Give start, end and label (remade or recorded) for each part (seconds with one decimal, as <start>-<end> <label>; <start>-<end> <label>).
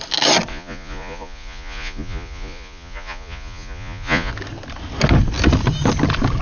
0.0-0.5 recorded; 0.5-4.3 remade; 4.3-6.4 recorded